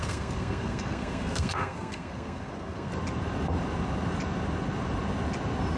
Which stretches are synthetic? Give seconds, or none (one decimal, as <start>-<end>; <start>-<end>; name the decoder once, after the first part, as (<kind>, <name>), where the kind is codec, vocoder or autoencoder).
0.0-2.9 (codec, SNAC)